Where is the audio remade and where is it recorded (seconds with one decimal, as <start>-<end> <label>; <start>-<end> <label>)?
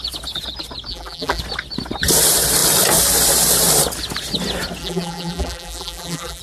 0.0-0.9 recorded; 0.9-1.4 remade; 1.4-4.8 recorded; 4.8-6.4 remade